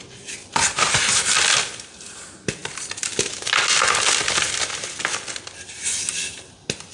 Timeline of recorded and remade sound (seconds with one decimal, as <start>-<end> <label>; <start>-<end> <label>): 0.0-6.9 recorded